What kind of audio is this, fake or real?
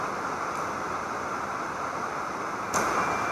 real